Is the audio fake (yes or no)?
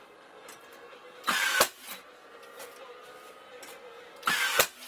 no